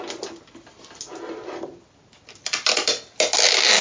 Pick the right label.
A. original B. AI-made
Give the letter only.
A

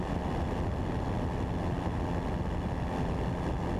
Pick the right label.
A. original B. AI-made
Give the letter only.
A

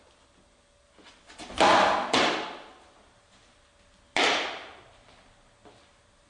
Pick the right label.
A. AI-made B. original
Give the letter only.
B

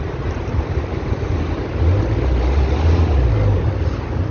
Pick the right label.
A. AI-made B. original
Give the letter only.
B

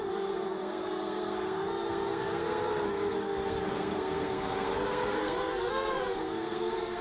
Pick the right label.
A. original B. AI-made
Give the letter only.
B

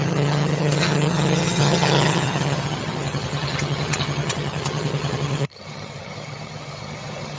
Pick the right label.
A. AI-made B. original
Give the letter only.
A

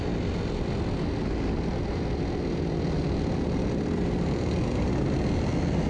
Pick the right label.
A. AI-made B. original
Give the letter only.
B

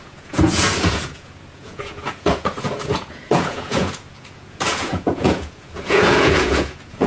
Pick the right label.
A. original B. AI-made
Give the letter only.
B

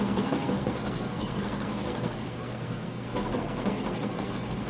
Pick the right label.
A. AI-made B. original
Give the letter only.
A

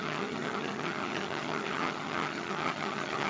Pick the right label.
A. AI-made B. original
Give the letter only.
A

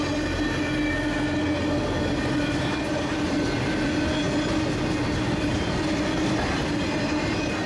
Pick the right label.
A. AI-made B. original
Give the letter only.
B